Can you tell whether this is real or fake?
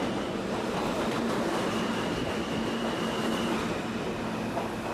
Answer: real